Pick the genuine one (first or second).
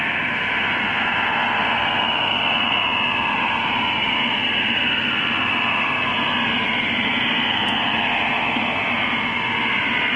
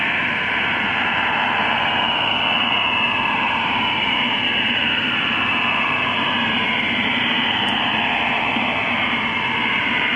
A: first